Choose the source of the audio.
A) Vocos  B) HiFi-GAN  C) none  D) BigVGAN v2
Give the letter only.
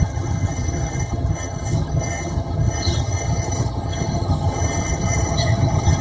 B